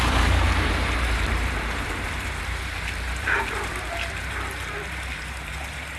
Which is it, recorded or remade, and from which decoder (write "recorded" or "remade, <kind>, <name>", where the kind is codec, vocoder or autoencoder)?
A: remade, vocoder, BigVGAN v2